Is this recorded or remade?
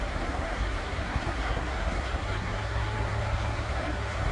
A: remade